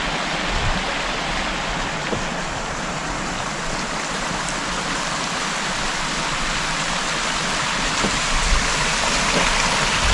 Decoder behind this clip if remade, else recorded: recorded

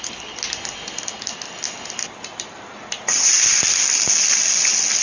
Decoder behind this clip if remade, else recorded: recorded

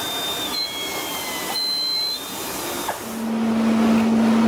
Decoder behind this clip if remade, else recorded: recorded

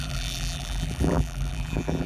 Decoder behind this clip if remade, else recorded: remade, vocoder, BigVGAN v2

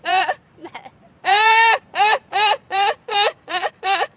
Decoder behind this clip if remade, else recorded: remade, vocoder, BigVGAN v2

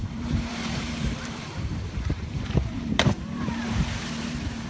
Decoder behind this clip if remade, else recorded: remade, vocoder, BigVGAN v2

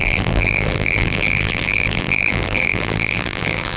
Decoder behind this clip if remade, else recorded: remade, vocoder, BigVGAN v2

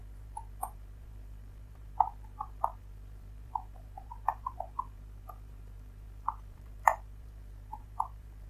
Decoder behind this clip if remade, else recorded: remade, vocoder, BigVGAN v2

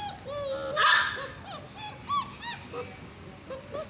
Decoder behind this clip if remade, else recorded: recorded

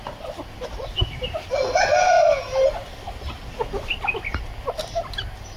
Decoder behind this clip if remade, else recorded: recorded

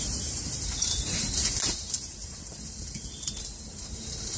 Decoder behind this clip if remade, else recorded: remade, vocoder, BigVGAN v2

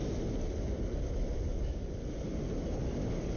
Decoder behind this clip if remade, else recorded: recorded